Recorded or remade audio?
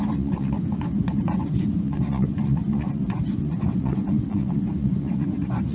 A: remade